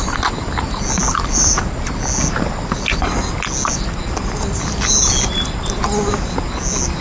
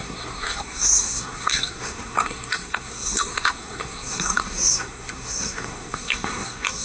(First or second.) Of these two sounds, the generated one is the second